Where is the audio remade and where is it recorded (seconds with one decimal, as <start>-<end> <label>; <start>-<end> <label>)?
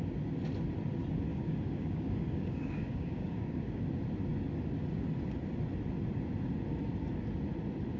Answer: 0.0-1.3 recorded; 1.3-3.8 remade; 3.8-8.0 recorded